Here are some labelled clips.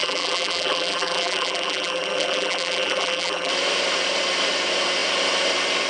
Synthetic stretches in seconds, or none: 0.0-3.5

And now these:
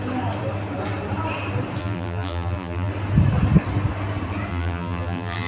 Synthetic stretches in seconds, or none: 1.8-2.9; 4.5-5.5

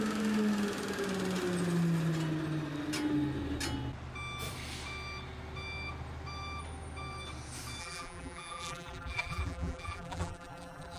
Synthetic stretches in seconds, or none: 7.8-11.0

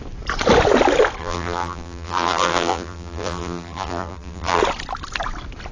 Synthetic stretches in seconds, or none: 1.2-4.6

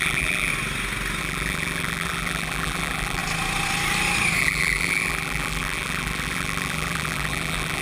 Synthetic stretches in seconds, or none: 0.0-0.5; 1.2-3.2; 4.4-7.8

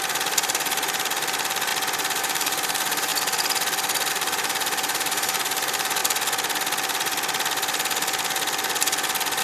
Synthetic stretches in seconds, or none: 0.0-1.7; 2.2-3.1; 4.1-6.0